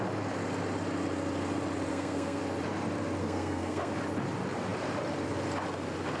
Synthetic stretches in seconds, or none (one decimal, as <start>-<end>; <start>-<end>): 1.9-2.4; 3.2-3.9